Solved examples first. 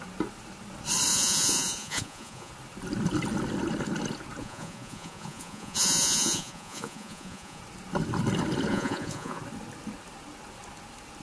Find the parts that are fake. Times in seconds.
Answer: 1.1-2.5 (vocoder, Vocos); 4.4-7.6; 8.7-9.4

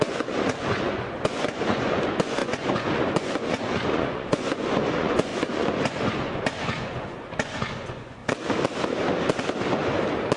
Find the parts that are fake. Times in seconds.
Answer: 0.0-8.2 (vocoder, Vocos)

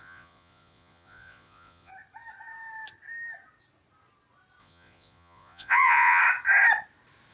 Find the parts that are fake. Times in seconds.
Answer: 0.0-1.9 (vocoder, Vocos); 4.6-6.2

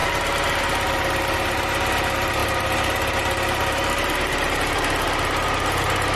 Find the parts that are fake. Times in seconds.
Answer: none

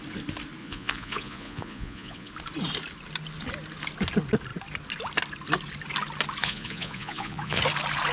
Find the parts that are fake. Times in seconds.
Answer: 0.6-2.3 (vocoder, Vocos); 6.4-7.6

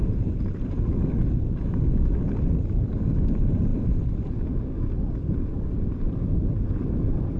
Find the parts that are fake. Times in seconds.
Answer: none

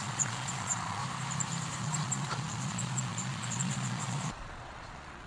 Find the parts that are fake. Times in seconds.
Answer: 0.0-1.0 (vocoder, Vocos); 1.8-5.3

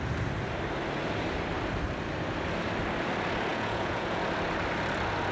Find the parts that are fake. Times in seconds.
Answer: 3.5-4.2 (vocoder, Vocos)